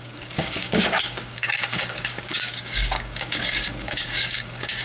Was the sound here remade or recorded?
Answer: remade